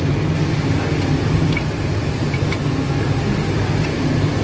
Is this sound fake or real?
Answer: real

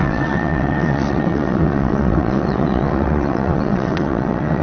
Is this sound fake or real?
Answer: fake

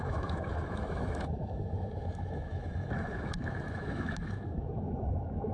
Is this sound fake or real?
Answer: fake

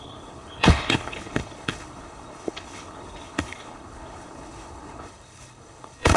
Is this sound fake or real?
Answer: fake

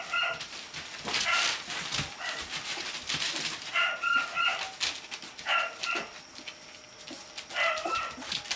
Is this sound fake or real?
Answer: real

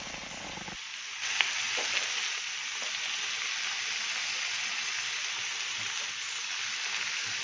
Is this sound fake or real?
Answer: real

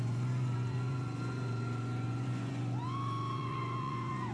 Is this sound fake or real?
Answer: fake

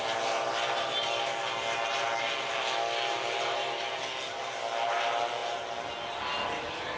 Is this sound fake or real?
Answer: real